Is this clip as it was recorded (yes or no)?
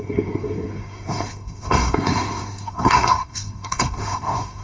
no